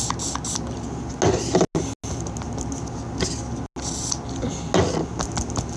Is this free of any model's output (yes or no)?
yes